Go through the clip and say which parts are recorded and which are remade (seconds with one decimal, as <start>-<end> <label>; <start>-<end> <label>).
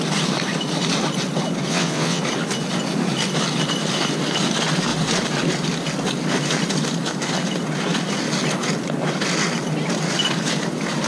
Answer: 0.0-1.7 recorded; 1.7-2.2 remade; 2.2-11.1 recorded